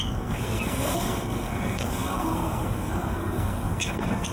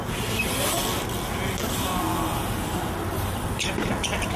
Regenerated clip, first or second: first